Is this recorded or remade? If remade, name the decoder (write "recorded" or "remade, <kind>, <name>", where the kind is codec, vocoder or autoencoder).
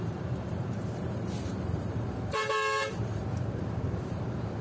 remade, vocoder, BigVGAN v2